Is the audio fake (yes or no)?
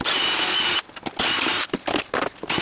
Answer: no